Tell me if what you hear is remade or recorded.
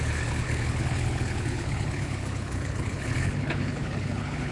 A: remade